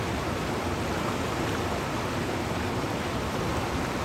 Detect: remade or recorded recorded